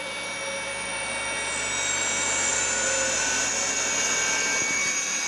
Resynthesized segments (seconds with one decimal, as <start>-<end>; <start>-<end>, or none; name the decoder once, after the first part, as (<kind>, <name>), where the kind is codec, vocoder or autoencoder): 2.5-3.5 (vocoder, BigVGAN v2)